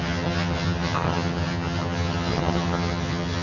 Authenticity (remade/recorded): remade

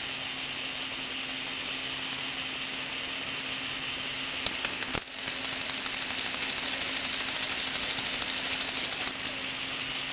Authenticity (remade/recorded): recorded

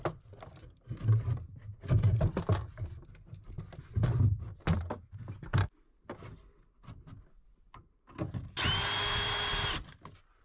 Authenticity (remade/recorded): recorded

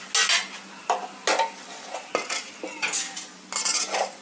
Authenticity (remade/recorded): recorded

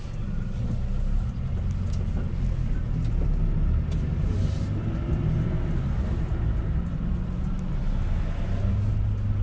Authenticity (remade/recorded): recorded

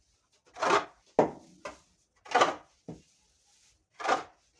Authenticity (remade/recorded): recorded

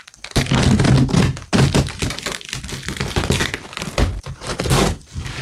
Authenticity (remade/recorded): recorded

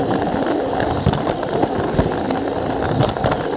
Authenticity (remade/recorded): recorded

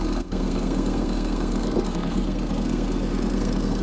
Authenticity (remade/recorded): remade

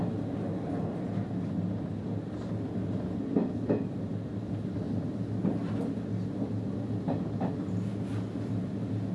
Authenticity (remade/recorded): recorded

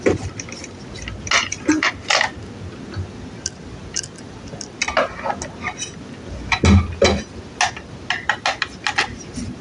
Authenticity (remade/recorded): recorded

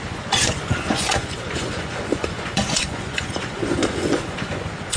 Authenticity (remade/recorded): remade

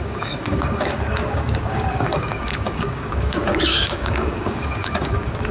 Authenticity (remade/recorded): remade